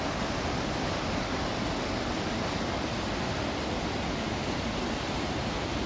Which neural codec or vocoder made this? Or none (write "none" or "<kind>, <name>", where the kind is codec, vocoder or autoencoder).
none